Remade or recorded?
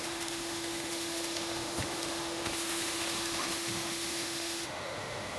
remade